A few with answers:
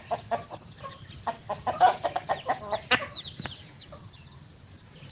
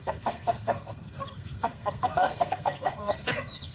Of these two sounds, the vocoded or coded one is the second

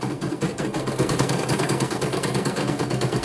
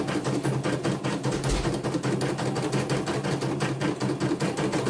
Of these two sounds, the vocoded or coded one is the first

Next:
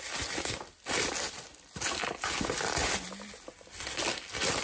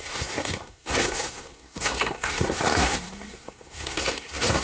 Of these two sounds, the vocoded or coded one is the second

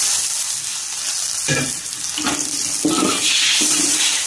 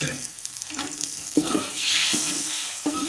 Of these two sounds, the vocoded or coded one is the second